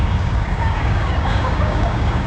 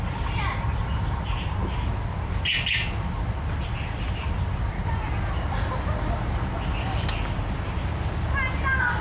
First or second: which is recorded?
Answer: second